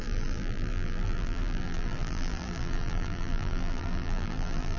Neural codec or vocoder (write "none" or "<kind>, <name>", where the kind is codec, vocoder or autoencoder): vocoder, BigVGAN v2